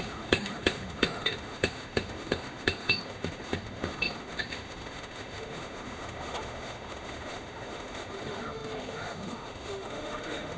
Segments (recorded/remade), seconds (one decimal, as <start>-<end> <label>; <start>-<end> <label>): 0.0-10.6 remade